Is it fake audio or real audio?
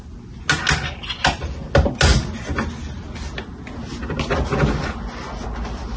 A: real